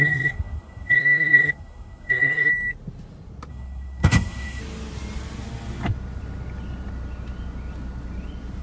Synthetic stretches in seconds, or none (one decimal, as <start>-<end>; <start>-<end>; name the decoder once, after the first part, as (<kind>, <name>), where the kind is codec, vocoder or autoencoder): 0.0-2.5 (codec, SNAC); 3.5-4.6